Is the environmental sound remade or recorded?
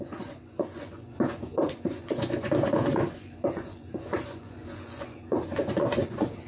remade